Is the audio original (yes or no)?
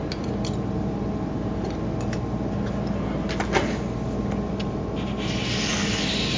yes